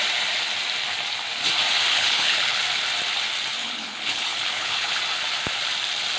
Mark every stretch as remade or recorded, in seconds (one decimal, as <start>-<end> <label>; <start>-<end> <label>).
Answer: 0.0-1.9 recorded; 1.9-2.6 remade; 2.6-3.6 recorded; 3.6-5.0 remade; 5.0-6.2 recorded